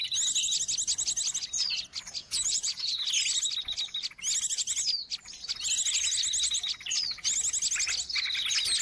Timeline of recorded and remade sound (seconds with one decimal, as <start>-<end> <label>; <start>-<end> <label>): 0.0-2.2 recorded; 2.2-3.0 remade; 3.0-8.8 recorded